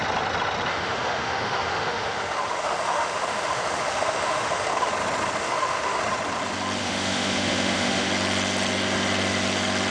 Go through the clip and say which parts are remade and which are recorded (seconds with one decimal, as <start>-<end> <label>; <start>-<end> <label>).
0.0-0.7 recorded; 0.7-4.9 remade; 4.9-5.4 recorded; 5.4-6.0 remade; 6.0-6.8 recorded; 6.8-8.1 remade; 8.1-9.9 recorded